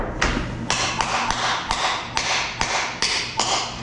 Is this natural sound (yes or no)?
yes